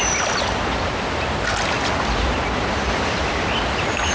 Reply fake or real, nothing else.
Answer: real